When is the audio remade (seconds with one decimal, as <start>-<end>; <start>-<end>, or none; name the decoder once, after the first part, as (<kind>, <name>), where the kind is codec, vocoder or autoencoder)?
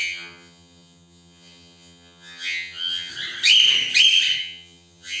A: 0.0-3.1 (vocoder, HiFi-GAN); 4.4-5.2